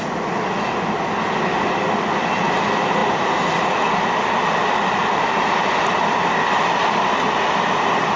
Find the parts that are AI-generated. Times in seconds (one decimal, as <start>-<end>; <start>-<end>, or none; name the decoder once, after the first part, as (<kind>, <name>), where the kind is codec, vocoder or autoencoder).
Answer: none